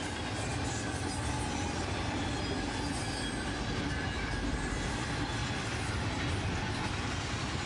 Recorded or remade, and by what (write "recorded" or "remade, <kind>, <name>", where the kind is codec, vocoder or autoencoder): recorded